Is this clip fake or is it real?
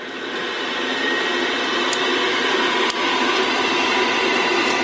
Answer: real